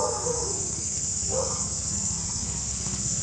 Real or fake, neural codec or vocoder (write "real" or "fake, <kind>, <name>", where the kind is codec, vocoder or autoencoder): fake, codec, SNAC